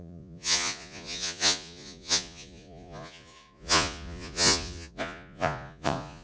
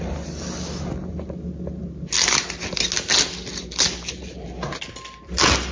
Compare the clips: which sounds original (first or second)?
second